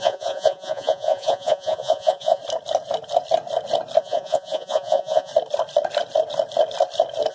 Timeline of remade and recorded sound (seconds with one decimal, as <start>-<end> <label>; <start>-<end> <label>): 0.0-2.4 remade; 2.4-4.0 recorded; 4.0-5.3 remade; 5.3-7.3 recorded